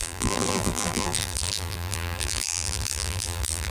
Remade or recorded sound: remade